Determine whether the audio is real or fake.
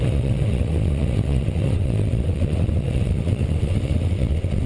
fake